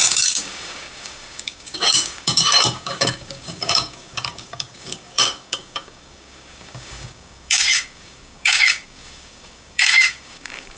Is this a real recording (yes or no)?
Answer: no